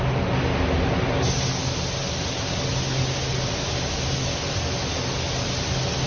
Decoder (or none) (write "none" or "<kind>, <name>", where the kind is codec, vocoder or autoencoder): none